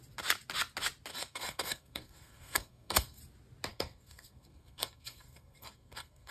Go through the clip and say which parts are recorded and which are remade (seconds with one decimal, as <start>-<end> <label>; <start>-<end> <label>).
0.0-1.1 recorded; 1.1-3.2 remade; 3.2-3.7 recorded; 3.7-6.3 remade